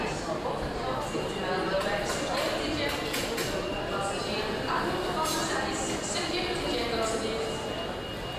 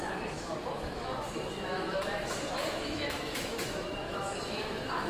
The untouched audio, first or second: first